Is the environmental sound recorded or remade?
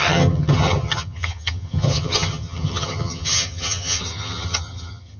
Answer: remade